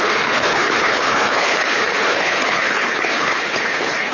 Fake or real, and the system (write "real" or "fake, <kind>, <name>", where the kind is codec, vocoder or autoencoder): fake, codec, HILCodec